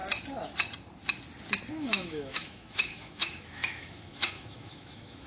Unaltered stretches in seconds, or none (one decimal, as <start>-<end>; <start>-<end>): 0.0-1.7